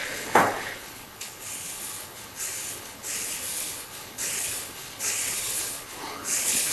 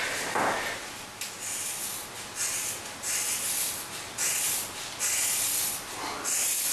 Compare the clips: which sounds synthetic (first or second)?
first